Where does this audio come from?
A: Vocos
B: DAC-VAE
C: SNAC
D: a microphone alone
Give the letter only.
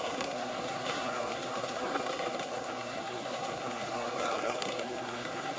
C